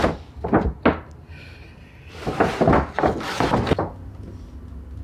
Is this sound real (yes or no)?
yes